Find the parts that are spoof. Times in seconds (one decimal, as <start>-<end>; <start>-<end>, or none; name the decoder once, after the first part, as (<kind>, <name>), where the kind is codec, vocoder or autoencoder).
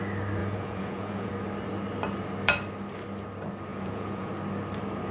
0.4-1.3 (vocoder, Vocos); 3.7-4.3